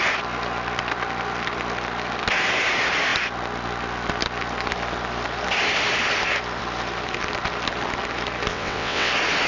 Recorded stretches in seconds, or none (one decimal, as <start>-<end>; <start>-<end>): 0.0-8.5; 9.1-9.5